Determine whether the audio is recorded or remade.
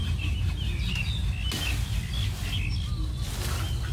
recorded